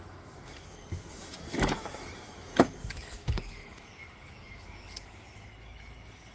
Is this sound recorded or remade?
remade